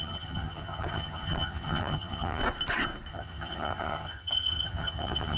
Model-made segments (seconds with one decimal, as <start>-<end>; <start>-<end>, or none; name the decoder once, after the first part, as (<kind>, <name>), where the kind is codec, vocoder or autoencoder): 0.0-2.4 (vocoder, HiFi-GAN); 3.1-5.4